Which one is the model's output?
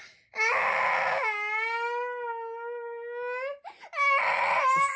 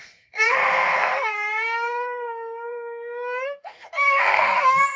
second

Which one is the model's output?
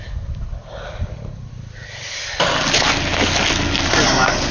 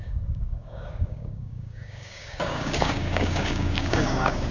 second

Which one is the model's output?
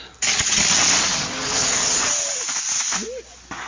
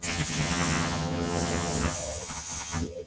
second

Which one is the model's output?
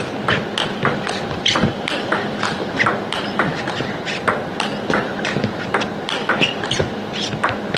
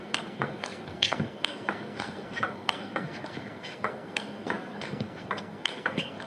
second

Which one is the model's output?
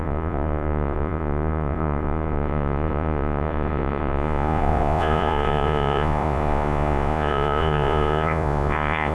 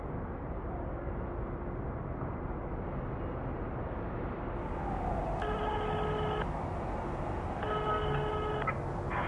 first